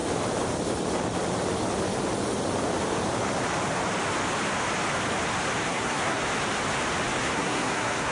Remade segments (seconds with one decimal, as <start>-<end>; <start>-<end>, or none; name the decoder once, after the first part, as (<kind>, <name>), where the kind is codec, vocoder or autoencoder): 5.7-6.2 (codec, SNAC); 7.2-8.1